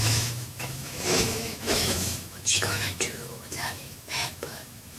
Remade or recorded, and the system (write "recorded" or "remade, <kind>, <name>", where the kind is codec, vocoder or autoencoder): remade, autoencoder, DAC-VAE